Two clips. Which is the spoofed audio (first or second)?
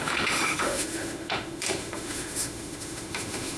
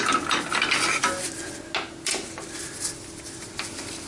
first